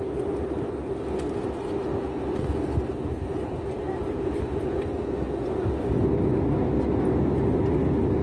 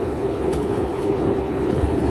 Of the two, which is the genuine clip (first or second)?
first